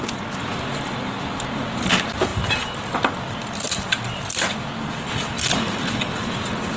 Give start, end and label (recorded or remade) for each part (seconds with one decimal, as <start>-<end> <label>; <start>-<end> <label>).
0.0-6.8 recorded